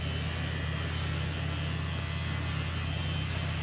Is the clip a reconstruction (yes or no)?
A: no